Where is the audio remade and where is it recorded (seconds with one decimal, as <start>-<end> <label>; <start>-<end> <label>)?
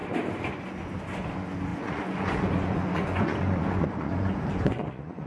0.0-1.7 recorded; 1.7-5.3 remade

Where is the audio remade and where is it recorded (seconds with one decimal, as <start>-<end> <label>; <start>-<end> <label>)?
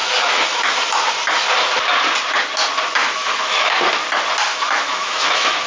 0.0-0.6 remade; 0.6-3.0 recorded; 3.0-3.8 remade; 3.8-4.5 recorded; 4.5-5.7 remade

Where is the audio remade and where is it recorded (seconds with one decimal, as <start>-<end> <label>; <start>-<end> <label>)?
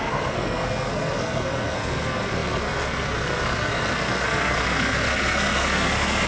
0.0-6.3 remade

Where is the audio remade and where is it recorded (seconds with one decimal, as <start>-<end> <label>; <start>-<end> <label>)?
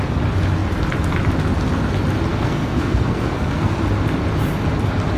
0.0-2.3 recorded; 2.3-3.8 remade; 3.8-5.2 recorded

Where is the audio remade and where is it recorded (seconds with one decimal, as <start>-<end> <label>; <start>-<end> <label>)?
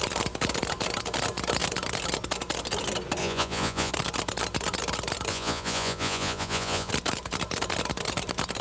0.0-3.2 recorded; 3.2-3.9 remade; 3.9-5.3 recorded; 5.3-6.9 remade; 6.9-8.6 recorded